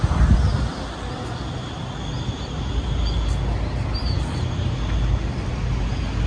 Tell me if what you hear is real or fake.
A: real